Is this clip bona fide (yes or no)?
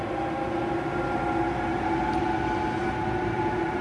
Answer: yes